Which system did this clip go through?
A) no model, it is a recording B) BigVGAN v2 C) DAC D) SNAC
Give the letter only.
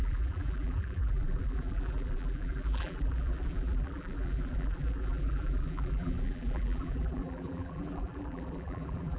B